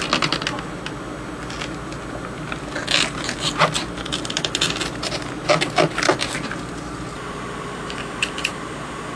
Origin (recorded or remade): recorded